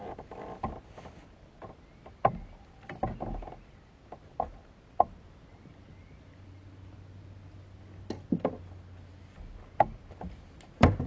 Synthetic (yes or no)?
no